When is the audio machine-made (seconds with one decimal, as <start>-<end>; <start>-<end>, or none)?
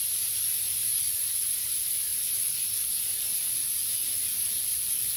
2.1-3.0; 4.0-5.2